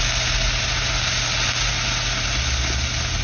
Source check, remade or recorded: recorded